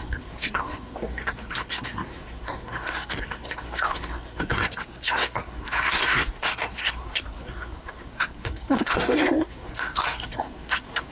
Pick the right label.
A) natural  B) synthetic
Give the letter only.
B